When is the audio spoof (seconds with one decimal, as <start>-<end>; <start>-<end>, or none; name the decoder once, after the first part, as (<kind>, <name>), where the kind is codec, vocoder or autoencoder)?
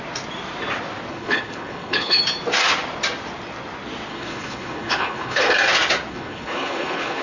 1.1-2.2 (codec, HILCodec); 4.1-5.4; 6.1-7.2